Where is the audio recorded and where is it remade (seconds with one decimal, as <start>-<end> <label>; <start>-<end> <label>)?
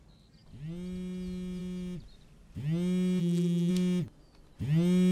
0.0-3.2 recorded; 3.2-3.7 remade; 3.7-5.1 recorded